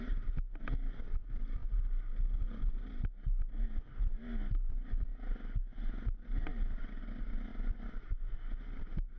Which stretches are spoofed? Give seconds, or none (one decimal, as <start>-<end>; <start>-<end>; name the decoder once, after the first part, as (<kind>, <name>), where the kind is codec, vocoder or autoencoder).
none

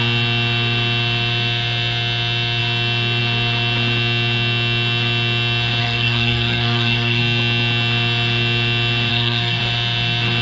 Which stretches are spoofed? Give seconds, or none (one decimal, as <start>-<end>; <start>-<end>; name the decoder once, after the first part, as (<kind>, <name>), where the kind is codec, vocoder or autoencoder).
5.8-7.2 (codec, SNAC); 9.1-9.6

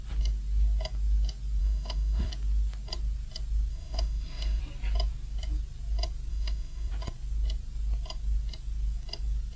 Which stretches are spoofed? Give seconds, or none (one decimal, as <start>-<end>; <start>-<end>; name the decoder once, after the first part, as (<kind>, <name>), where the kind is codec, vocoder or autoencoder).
1.6-2.3 (autoencoder, DAC-VAE); 3.7-4.6; 6.3-6.9

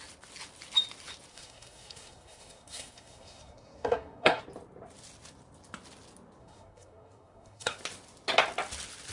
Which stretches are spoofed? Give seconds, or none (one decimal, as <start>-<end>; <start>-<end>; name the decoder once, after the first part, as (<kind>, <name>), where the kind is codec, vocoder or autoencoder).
1.3-4.4 (codec, SNAC); 6.4-7.8